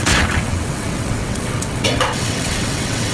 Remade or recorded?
remade